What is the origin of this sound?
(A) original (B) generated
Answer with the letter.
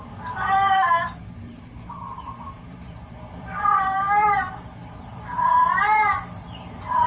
B